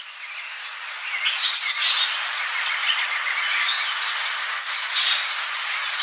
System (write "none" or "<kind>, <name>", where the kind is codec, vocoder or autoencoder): none